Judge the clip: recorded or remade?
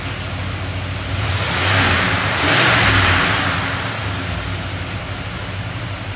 recorded